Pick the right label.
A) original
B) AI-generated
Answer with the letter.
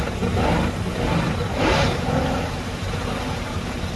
B